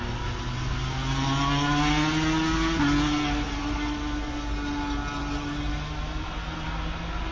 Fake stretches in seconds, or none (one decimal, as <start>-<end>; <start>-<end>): none